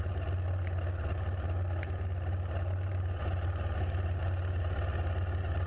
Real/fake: real